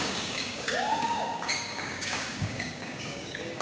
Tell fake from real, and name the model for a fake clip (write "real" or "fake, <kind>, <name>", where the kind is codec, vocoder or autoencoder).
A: fake, codec, DAC